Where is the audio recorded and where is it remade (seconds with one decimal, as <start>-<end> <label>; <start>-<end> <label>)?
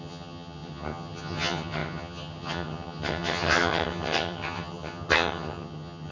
0.0-6.1 remade